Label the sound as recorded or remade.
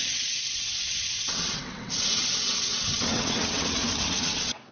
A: remade